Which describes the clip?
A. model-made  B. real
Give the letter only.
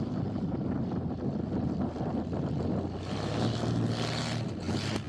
B